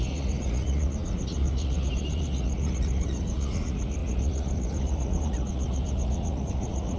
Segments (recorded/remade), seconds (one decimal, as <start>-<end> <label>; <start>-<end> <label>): 0.0-7.0 remade